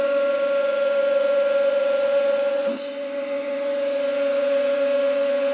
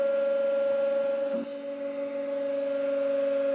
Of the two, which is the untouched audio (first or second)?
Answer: second